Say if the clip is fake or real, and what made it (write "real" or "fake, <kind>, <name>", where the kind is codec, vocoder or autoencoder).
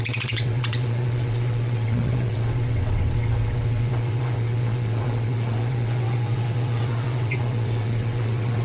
fake, vocoder, WaveNeXt